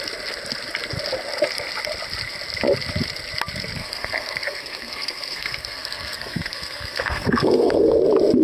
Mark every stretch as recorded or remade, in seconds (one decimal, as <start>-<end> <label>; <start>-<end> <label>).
0.0-3.8 recorded; 3.8-8.0 remade; 8.0-8.4 recorded

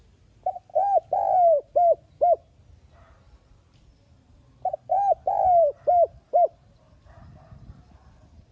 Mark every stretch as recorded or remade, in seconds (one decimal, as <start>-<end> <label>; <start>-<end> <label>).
0.0-8.5 recorded

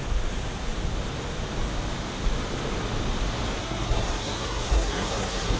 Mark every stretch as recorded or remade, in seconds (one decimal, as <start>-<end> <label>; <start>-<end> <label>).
0.0-3.6 recorded; 3.6-5.6 remade

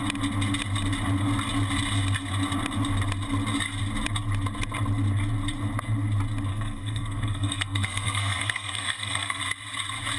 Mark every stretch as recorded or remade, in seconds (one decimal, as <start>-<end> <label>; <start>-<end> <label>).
0.0-6.5 recorded; 6.5-9.4 remade; 9.4-10.2 recorded

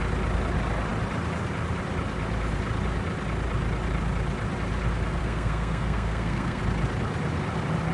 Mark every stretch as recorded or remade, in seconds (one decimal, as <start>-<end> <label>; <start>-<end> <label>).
0.0-5.2 recorded; 5.2-6.6 remade; 6.6-7.9 recorded

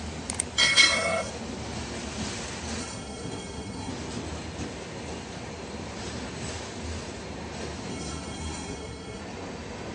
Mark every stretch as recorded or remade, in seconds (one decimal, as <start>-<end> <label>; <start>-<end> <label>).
0.0-0.6 recorded; 0.6-1.3 remade; 1.3-2.8 recorded; 2.8-3.9 remade; 3.9-7.9 recorded; 7.9-9.2 remade; 9.2-9.9 recorded